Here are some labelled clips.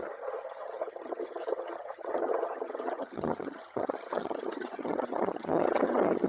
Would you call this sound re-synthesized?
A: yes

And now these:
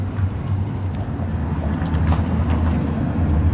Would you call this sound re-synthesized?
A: yes